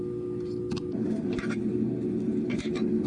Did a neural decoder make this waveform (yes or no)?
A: no